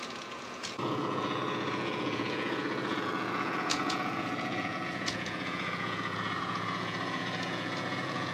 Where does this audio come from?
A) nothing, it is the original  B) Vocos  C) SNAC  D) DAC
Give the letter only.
B